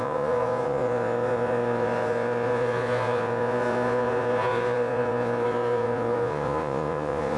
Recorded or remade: remade